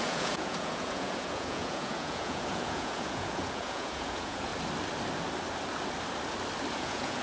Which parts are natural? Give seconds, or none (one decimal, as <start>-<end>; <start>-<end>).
4.5-6.7